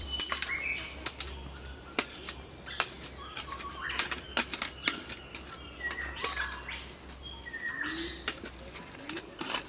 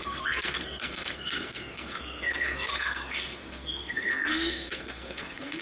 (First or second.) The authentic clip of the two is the first